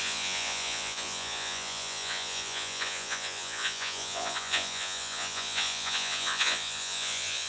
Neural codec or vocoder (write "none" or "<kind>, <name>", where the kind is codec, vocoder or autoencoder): vocoder, Vocos